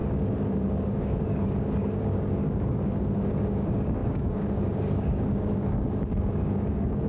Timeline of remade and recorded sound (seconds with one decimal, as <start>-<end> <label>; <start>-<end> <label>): 0.0-7.1 remade